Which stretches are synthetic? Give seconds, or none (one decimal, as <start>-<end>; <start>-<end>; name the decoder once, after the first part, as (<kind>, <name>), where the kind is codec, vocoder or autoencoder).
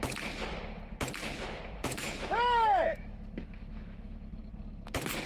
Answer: 1.2-4.4 (autoencoder, DAC-VAE)